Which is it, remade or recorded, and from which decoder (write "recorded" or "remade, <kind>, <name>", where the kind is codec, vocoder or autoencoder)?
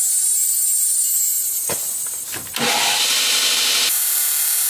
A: recorded